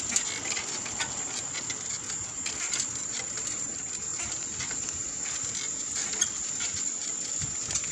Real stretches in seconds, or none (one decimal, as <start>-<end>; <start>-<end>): 0.0-7.9